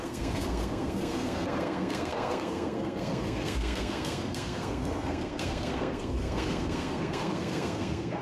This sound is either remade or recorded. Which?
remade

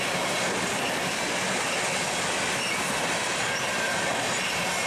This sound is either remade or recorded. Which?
recorded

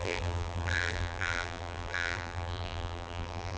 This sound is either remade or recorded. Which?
remade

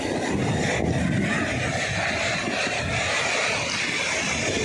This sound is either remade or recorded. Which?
recorded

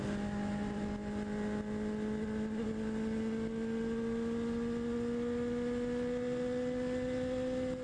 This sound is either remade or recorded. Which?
recorded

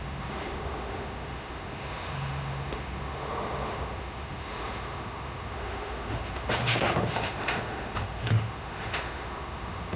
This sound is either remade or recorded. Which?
remade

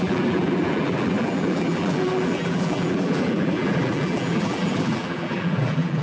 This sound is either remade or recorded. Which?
remade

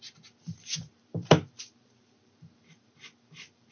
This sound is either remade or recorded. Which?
remade